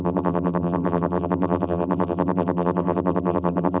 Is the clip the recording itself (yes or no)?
no